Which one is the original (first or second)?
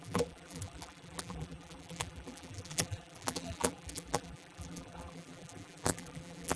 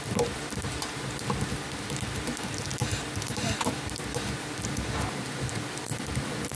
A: second